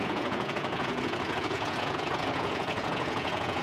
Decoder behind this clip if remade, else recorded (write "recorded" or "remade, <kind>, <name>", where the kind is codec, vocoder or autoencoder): remade, vocoder, Vocos